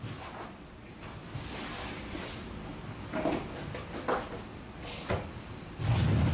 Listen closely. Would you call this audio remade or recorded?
recorded